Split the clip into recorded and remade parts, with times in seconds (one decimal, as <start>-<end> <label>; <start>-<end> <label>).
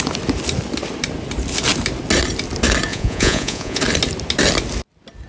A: 0.0-2.9 recorded; 2.9-3.8 remade; 3.8-5.3 recorded